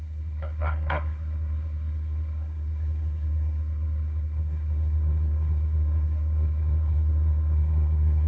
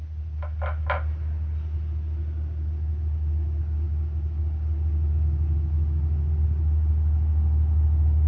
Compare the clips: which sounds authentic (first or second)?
second